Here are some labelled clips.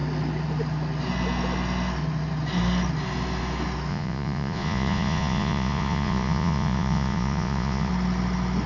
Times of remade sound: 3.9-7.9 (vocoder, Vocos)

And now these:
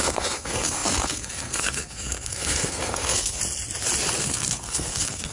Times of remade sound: 0.0-3.4 (codec, SNAC); 4.2-5.3